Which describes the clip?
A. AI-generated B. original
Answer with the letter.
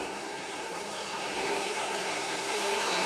A